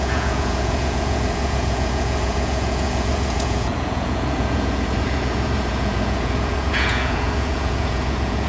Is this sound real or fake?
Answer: fake